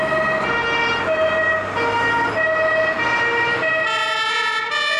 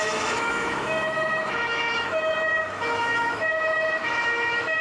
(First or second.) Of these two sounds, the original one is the first